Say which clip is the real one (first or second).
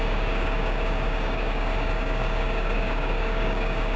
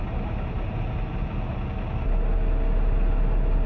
second